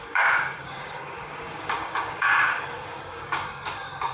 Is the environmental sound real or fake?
fake